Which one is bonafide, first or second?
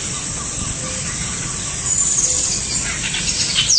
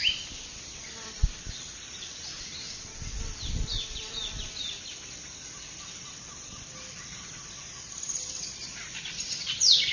first